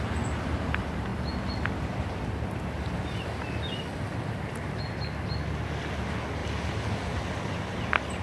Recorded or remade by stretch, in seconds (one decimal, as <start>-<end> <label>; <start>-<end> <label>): 0.0-8.2 recorded